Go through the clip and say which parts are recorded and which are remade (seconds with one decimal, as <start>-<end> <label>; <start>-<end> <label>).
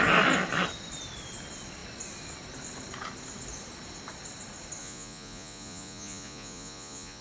0.0-4.8 recorded; 4.8-7.2 remade